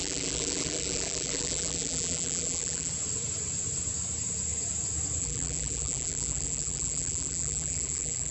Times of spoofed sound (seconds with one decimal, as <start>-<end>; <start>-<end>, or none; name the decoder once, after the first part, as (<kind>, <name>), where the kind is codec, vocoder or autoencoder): 0.0-2.9 (vocoder, BigVGAN v2); 5.2-8.3